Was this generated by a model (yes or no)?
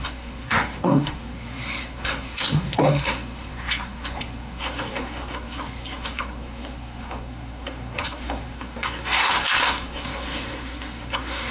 yes